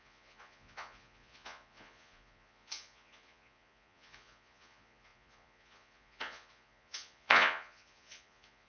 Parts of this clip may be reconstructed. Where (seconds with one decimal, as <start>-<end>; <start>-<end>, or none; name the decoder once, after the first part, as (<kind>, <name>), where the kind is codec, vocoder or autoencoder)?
0.0-8.7 (vocoder, Vocos)